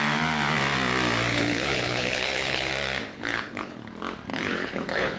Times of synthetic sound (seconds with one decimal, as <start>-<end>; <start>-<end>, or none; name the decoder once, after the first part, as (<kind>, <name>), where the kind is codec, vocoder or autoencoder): 1.3-2.7 (codec, HILCodec); 3.1-3.9; 4.3-5.2